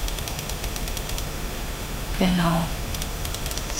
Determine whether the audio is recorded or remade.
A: remade